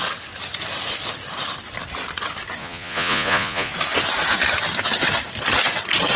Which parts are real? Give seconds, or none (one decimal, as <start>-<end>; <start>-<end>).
0.0-2.6; 3.7-6.2